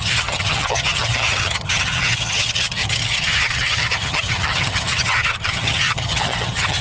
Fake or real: fake